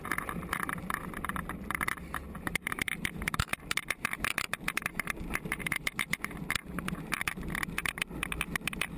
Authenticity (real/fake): real